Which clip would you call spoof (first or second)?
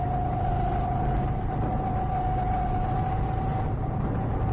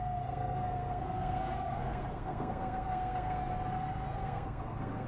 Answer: second